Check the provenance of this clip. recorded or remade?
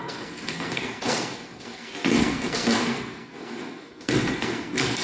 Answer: remade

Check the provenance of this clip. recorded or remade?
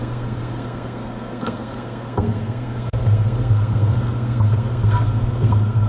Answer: remade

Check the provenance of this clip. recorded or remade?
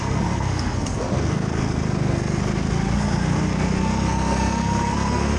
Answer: remade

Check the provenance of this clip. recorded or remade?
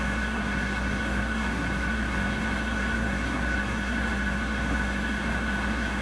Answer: remade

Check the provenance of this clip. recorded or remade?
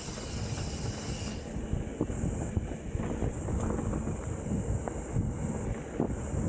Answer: recorded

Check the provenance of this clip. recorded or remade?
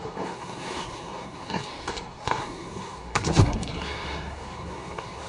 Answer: remade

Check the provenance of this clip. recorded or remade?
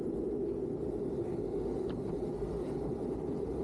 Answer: recorded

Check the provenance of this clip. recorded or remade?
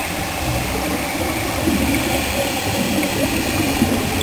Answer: recorded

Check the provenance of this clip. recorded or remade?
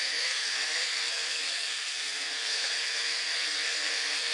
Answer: remade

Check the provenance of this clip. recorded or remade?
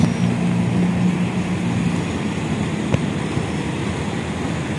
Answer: recorded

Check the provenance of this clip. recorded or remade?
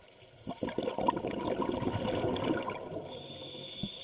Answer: recorded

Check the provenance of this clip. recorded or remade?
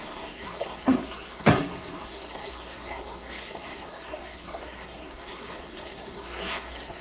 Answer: remade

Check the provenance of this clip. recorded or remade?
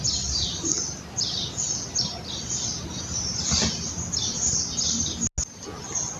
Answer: recorded